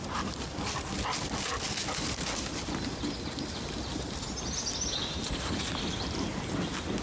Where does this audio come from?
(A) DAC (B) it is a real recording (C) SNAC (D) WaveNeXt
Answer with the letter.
B